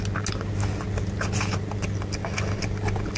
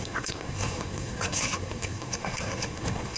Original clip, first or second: first